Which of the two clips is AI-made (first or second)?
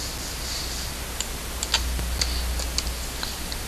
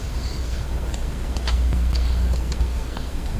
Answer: second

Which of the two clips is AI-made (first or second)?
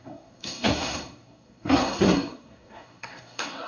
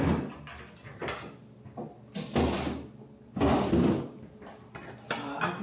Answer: first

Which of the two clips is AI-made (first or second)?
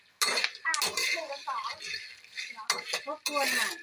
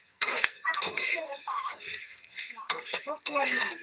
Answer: second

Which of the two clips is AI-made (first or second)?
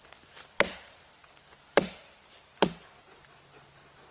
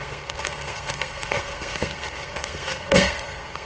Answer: second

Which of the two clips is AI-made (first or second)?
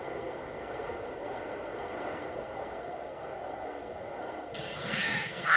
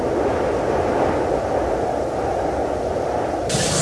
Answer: first